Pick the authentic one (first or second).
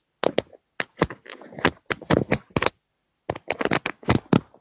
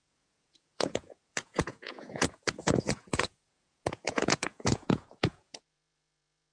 first